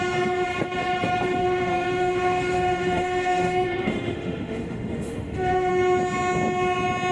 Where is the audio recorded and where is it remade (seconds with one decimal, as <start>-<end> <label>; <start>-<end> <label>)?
0.0-1.4 recorded; 1.4-5.7 remade; 5.7-7.1 recorded